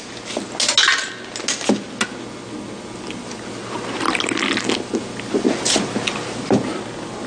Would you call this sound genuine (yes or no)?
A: yes